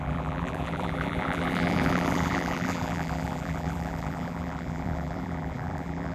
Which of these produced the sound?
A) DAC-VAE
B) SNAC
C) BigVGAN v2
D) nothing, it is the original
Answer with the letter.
C